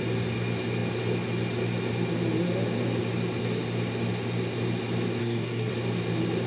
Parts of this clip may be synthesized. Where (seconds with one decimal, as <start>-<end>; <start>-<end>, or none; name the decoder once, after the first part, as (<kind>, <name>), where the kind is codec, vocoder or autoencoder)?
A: 5.2-5.7 (codec, SNAC)